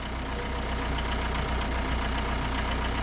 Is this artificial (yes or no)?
no